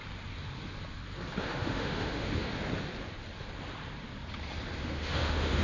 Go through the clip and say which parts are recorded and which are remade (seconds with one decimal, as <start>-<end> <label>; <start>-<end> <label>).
0.0-1.4 recorded; 1.4-2.5 remade; 2.5-4.8 recorded; 4.8-5.6 remade